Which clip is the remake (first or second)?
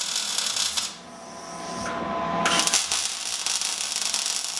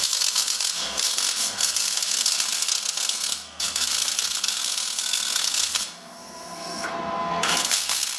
second